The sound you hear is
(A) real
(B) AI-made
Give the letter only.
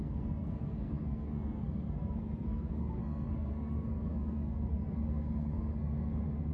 B